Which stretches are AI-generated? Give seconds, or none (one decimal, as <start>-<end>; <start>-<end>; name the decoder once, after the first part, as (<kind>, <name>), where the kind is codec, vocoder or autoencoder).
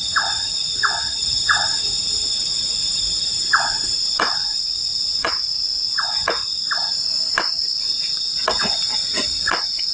0.0-6.4 (vocoder, Vocos); 7.8-9.9